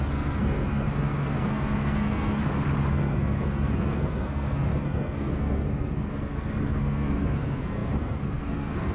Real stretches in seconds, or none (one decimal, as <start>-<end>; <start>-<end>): 2.4-2.9